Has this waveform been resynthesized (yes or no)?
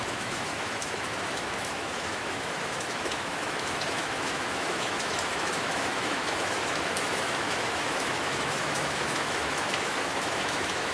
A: yes